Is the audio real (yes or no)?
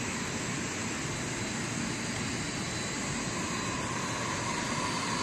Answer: yes